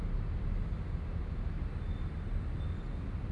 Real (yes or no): yes